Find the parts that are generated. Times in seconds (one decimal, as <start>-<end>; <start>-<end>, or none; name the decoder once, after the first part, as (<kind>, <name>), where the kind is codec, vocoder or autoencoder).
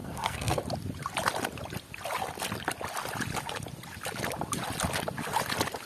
0.0-0.6 (codec, SNAC)